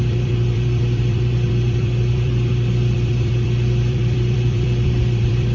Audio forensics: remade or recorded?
remade